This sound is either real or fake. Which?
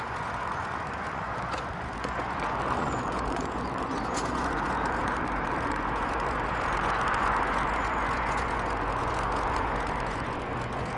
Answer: fake